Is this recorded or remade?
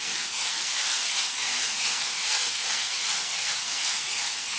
remade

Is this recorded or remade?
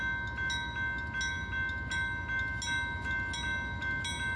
recorded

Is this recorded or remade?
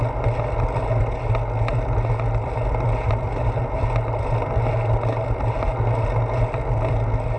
recorded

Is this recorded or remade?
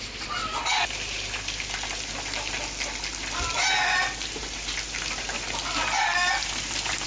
recorded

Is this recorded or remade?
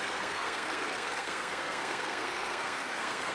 remade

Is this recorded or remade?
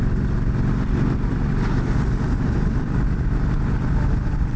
recorded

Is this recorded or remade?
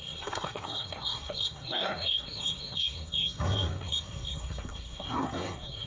remade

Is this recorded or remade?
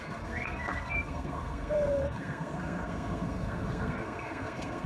remade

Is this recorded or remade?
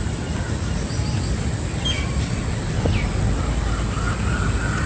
recorded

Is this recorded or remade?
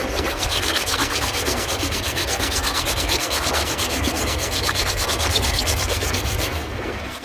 remade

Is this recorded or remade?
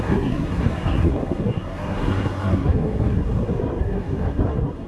remade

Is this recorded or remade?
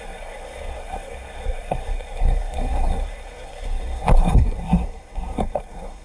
remade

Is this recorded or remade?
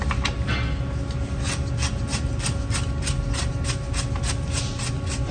recorded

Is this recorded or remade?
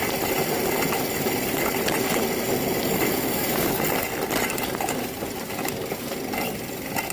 recorded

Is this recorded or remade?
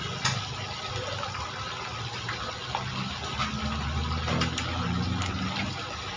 recorded